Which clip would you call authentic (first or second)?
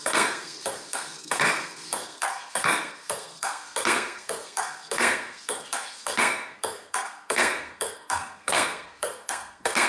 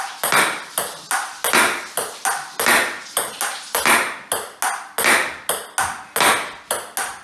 second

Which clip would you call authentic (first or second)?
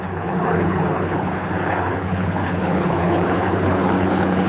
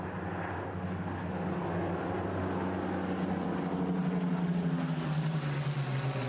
second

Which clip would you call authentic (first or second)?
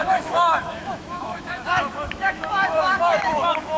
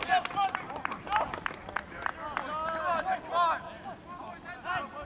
second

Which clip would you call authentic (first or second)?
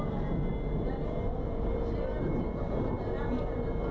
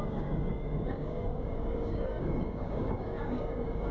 first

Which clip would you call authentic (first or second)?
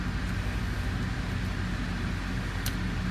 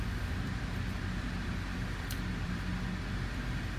first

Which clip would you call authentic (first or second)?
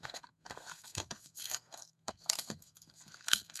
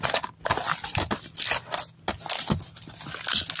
second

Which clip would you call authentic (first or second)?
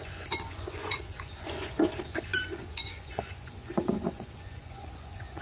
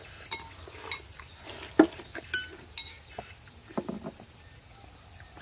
second